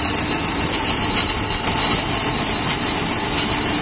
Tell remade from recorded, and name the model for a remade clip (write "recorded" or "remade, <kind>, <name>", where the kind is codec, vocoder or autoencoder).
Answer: remade, vocoder, BigVGAN v2